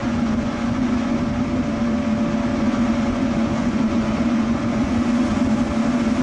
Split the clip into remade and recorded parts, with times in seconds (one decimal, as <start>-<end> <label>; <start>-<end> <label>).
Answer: 0.0-1.2 remade; 1.2-2.5 recorded; 2.5-5.4 remade; 5.4-6.2 recorded